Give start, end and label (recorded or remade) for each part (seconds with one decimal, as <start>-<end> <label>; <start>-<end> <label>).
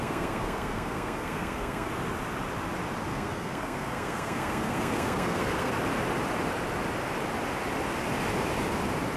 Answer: 0.0-1.9 remade; 1.9-3.1 recorded; 3.1-5.7 remade; 5.7-9.2 recorded